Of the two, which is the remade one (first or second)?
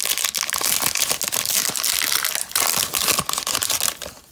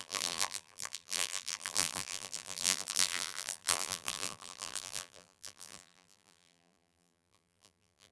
second